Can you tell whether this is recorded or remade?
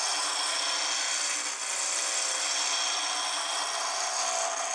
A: recorded